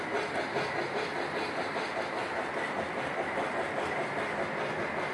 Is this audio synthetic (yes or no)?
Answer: no